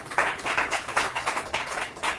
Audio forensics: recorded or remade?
remade